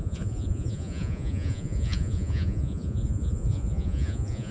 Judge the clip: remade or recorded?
remade